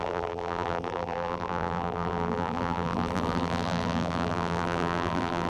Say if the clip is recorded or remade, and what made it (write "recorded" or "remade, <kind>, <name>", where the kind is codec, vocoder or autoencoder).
remade, vocoder, BigVGAN v2